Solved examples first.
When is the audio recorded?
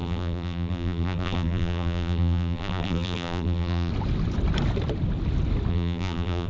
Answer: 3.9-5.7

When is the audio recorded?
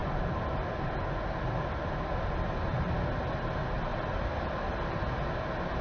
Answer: 0.0-5.8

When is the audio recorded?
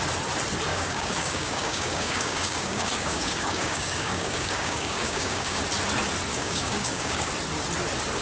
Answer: 0.0-0.7; 5.6-6.3; 7.3-8.2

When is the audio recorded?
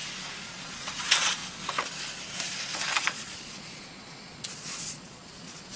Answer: 0.0-0.5; 1.4-3.0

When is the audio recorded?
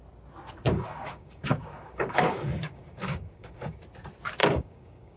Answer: 0.0-0.7; 3.8-4.4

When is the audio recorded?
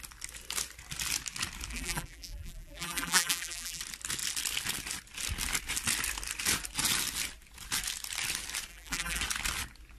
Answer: 0.0-1.7; 3.8-8.7; 9.2-10.0